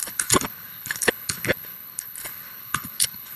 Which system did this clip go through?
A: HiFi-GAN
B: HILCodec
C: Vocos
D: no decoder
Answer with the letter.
B